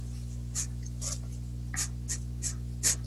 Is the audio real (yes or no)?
yes